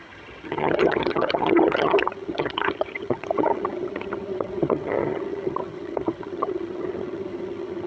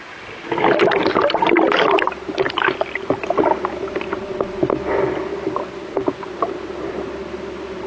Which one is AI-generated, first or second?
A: first